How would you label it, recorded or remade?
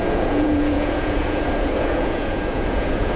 remade